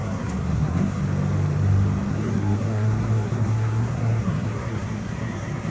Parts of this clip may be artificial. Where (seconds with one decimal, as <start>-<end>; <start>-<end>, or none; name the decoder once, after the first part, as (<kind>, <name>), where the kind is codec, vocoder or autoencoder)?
0.0-1.0 (codec, SNAC); 2.1-5.7